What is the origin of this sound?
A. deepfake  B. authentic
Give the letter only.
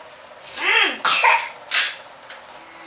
B